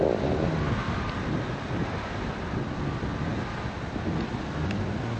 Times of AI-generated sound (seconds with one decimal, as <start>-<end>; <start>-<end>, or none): 1.8-2.6